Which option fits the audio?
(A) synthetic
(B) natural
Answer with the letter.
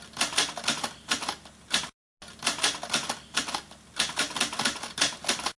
B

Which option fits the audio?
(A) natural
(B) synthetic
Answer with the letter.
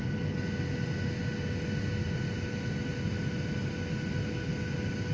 A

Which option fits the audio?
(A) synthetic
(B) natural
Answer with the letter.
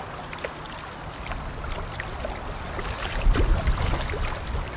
B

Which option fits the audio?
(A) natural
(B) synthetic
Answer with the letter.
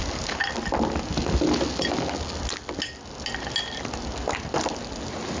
A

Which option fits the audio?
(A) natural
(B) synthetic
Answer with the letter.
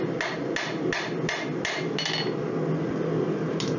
A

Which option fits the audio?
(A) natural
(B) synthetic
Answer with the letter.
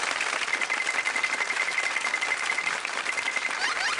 B